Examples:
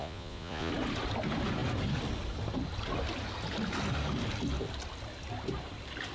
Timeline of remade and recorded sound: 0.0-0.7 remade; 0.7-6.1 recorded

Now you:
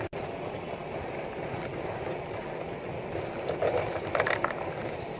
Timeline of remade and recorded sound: 0.0-5.2 recorded

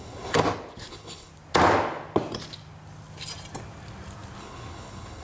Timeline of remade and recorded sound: 0.0-0.4 remade; 0.4-0.9 recorded; 0.9-1.3 remade; 1.3-4.4 recorded; 4.4-5.2 remade

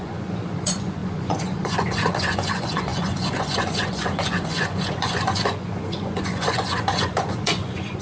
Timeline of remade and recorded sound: 0.0-8.0 remade

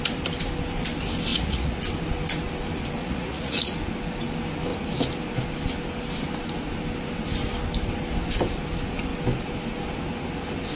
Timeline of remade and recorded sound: 0.0-1.3 recorded; 1.3-1.8 remade; 1.8-3.0 recorded; 3.0-3.7 remade; 3.7-10.8 recorded

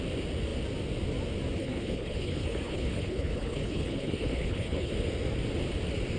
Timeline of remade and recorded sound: 0.0-1.6 recorded; 1.6-4.9 remade; 4.9-6.2 recorded